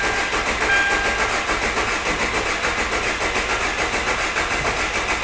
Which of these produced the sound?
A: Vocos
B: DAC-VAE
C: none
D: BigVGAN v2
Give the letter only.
C